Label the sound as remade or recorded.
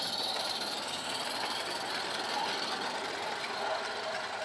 recorded